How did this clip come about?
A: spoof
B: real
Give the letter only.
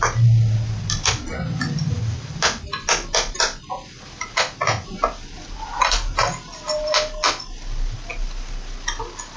B